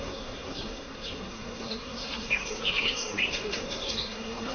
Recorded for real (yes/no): no